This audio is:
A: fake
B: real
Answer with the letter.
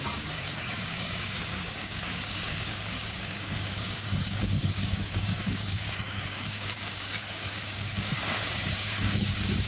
A